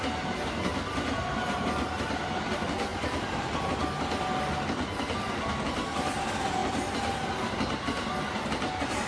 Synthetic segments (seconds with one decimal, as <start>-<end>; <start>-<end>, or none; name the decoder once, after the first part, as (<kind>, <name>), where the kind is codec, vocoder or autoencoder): none